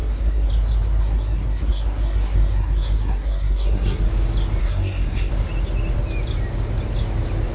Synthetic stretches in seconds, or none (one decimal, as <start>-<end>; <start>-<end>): 0.0-0.5; 1.0-4.0; 4.6-5.3